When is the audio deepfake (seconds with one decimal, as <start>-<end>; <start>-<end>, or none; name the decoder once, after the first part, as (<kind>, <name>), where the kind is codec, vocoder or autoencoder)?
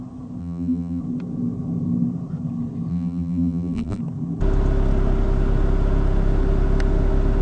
0.4-1.0 (vocoder, BigVGAN v2); 2.9-4.0